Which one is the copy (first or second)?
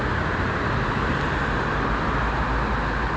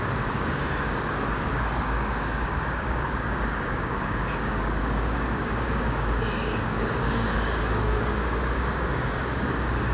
second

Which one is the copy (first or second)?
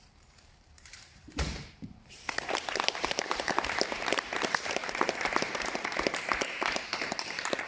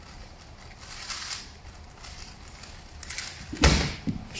first